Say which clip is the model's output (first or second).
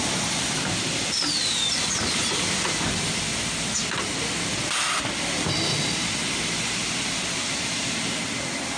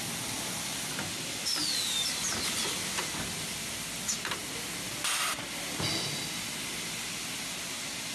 first